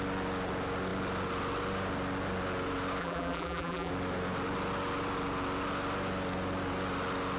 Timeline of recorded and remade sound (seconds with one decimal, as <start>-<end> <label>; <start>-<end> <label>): 0.0-3.0 recorded; 3.0-3.9 remade; 3.9-7.4 recorded